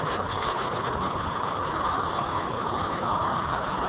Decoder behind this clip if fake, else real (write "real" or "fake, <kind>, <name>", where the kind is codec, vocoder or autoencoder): fake, codec, HILCodec